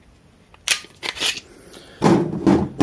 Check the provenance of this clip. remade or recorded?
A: recorded